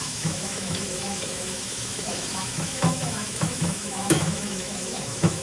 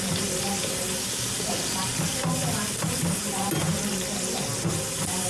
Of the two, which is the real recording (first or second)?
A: second